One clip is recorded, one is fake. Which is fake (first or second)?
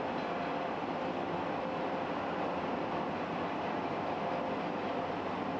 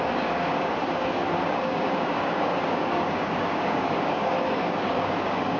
second